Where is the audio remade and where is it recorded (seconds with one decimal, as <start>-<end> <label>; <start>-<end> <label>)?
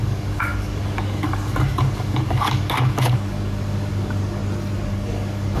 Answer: 0.0-4.4 remade; 4.4-4.9 recorded; 4.9-5.6 remade